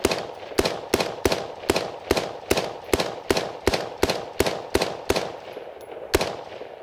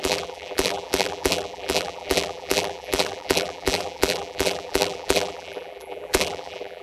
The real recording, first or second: first